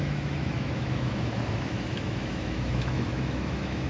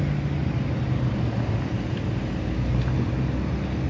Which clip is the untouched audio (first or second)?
second